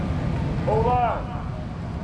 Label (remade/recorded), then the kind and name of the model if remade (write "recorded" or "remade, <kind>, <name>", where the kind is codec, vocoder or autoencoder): recorded